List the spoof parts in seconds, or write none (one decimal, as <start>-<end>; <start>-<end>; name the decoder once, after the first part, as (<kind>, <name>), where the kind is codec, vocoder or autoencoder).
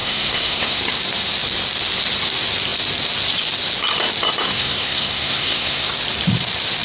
0.0-0.8 (codec, SNAC); 4.4-5.9